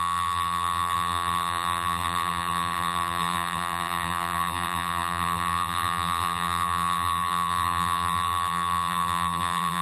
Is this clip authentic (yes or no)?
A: no